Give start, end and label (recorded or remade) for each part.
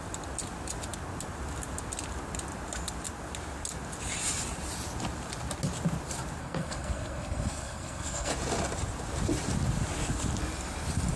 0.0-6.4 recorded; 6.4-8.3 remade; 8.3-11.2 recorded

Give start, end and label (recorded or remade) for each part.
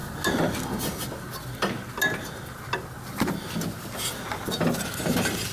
0.0-5.5 recorded